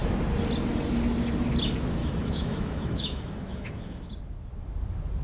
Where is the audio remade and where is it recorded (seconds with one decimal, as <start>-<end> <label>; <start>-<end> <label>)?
0.0-2.0 recorded; 2.0-4.1 remade; 4.1-5.2 recorded